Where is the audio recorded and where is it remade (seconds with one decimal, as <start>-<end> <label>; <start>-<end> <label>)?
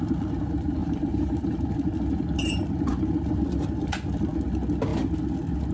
0.0-0.8 recorded; 0.8-1.6 remade; 1.6-5.7 recorded